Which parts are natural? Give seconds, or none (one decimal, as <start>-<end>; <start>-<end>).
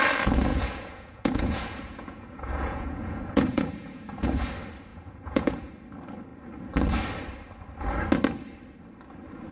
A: 0.0-0.5; 4.5-4.9; 5.7-9.5